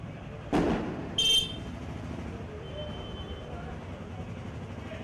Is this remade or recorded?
recorded